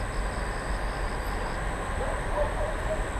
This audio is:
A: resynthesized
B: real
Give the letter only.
B